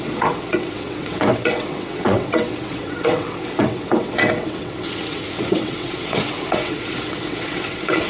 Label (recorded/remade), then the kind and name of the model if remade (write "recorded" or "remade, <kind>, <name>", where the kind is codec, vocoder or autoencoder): remade, vocoder, WaveNeXt